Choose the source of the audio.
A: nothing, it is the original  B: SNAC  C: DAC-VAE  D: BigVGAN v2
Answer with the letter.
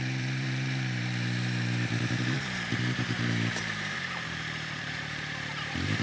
D